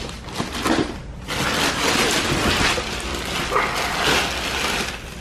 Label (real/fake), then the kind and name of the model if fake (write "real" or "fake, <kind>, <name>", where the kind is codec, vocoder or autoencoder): real